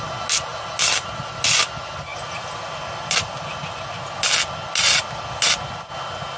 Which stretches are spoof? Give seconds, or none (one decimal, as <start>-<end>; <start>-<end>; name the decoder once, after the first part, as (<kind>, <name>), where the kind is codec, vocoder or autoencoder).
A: none